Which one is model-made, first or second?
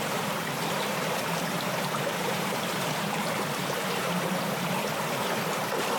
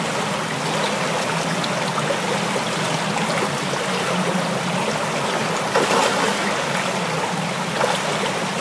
first